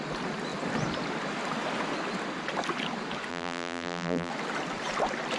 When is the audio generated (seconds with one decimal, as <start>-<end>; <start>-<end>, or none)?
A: 3.3-4.3